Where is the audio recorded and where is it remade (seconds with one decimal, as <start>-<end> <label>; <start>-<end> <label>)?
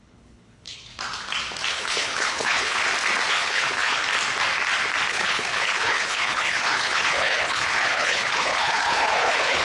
0.0-0.9 remade; 0.9-1.7 recorded; 1.7-2.8 remade; 2.8-3.3 recorded; 3.3-4.0 remade; 4.0-5.1 recorded; 5.1-9.6 remade